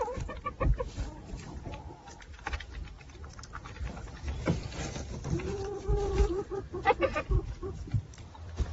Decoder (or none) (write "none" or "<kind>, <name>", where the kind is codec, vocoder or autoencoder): vocoder, BigVGAN v2